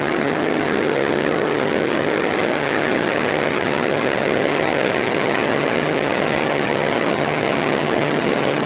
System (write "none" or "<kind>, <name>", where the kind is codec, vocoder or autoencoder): vocoder, HiFi-GAN